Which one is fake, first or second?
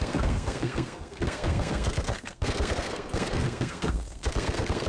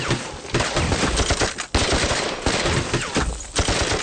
first